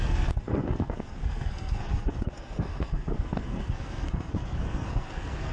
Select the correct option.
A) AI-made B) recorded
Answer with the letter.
A